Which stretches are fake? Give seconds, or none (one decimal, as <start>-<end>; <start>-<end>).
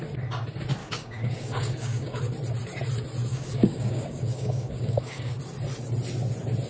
0.8-2.2; 3.3-5.4